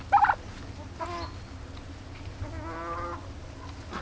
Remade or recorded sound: recorded